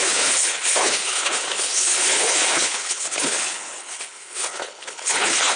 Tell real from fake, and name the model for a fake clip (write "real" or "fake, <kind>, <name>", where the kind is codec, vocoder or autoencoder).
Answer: fake, codec, HILCodec